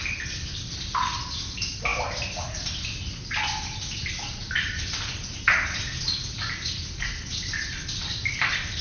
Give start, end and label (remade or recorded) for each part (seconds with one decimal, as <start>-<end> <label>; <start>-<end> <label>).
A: 0.0-8.8 recorded